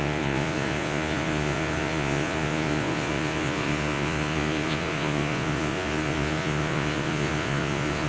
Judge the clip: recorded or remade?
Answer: remade